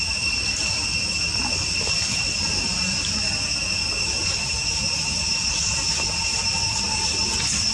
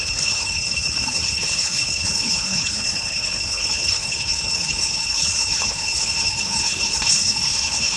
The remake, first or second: second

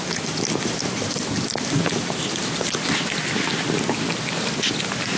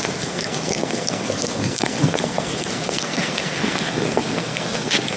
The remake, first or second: second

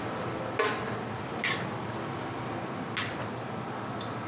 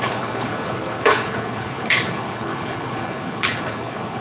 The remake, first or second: second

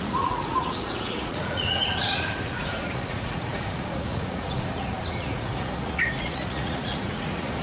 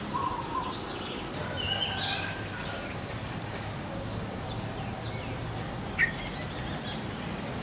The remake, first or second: first